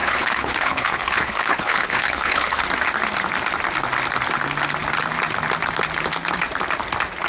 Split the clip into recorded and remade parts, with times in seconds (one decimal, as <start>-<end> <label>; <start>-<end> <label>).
0.0-2.6 remade; 2.6-7.3 recorded